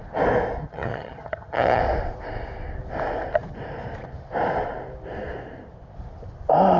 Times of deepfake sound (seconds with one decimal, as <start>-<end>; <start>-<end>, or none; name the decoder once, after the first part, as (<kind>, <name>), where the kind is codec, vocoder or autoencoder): 0.6-1.8 (vocoder, HiFi-GAN)